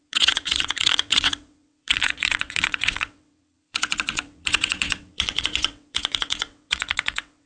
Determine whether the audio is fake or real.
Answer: fake